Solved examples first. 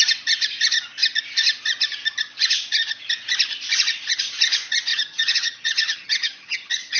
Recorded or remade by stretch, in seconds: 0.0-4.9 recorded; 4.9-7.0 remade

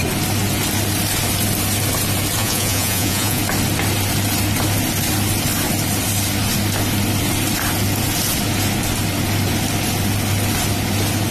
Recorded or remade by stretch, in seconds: 0.0-2.4 recorded; 2.4-3.4 remade; 3.4-11.3 recorded

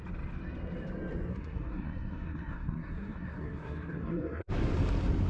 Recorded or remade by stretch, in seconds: 0.0-1.3 recorded; 1.3-4.5 remade; 4.5-5.3 recorded

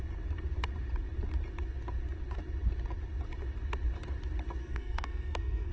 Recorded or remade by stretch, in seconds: 0.0-4.6 recorded; 4.6-5.7 remade

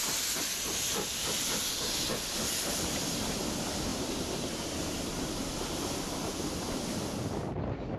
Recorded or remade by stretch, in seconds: 0.0-8.0 recorded

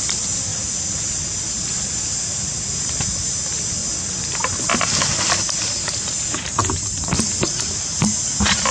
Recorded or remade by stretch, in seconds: 0.0-8.7 recorded

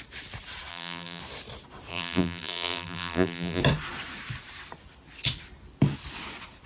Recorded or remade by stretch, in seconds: 0.0-0.7 recorded; 0.7-1.2 remade; 1.2-1.9 recorded; 1.9-3.6 remade; 3.6-6.7 recorded